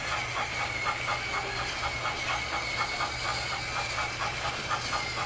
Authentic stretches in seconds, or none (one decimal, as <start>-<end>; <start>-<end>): 0.0-5.3